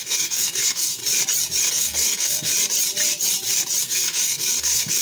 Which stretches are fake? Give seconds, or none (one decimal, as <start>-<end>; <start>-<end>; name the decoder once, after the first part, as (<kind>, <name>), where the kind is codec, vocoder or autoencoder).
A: 0.0-1.0 (codec, SNAC); 1.7-2.5; 3.8-5.0